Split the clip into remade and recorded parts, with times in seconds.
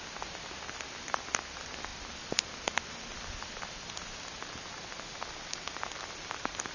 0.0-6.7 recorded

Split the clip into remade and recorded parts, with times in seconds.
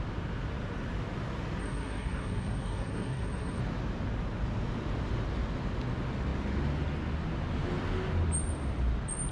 0.0-1.6 recorded; 1.6-3.6 remade; 3.6-9.3 recorded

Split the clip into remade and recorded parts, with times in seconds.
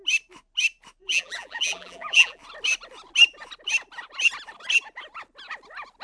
0.0-1.0 recorded; 1.0-2.4 remade; 2.4-6.0 recorded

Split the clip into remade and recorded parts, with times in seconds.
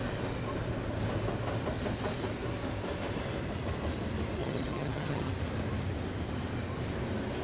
0.0-4.4 recorded; 4.4-5.3 remade; 5.3-7.4 recorded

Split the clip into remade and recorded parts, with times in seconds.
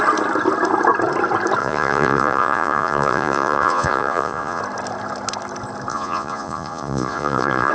0.0-1.6 recorded; 1.6-4.6 remade; 4.6-5.9 recorded; 5.9-7.7 remade